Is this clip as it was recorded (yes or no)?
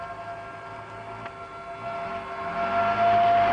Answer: yes